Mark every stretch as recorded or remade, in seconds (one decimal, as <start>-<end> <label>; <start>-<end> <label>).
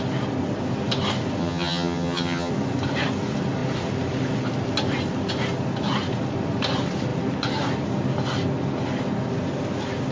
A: 0.0-1.4 recorded; 1.4-2.5 remade; 2.5-10.1 recorded